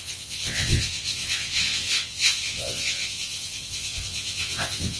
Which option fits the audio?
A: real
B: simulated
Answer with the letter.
B